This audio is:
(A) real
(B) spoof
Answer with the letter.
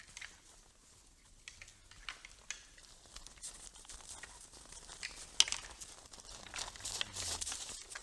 A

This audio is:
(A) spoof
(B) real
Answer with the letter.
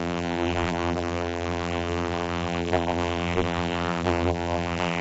A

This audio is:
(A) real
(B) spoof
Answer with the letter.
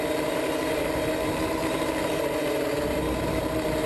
B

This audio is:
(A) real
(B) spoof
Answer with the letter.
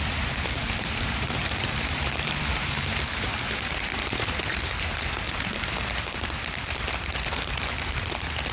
B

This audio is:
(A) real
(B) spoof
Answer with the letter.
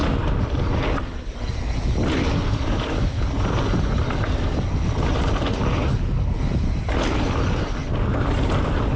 A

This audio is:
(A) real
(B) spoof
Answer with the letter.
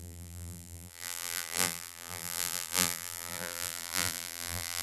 B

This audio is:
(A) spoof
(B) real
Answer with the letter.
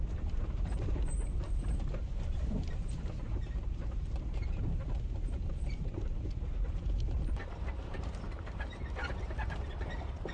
A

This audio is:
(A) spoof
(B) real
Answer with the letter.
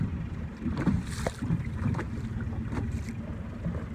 B